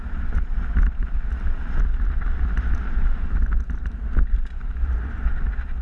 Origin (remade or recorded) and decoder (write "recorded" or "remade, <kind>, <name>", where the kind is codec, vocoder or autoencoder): recorded